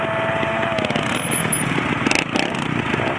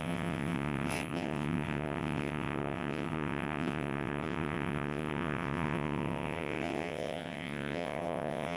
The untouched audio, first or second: first